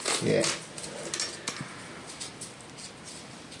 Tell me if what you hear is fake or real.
real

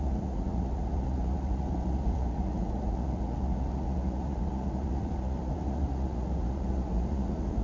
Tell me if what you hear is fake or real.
fake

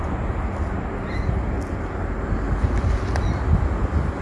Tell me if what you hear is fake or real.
real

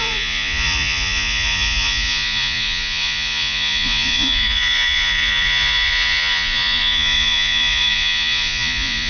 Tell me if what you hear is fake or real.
fake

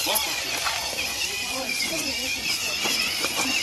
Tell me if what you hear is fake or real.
fake